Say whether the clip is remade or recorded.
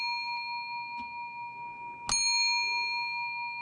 recorded